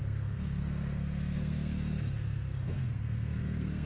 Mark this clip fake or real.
fake